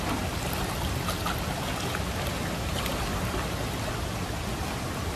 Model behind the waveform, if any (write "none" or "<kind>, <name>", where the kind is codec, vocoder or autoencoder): none